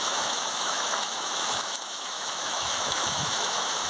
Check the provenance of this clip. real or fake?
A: fake